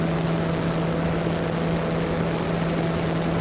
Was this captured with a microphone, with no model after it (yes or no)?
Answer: yes